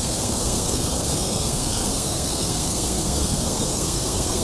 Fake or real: fake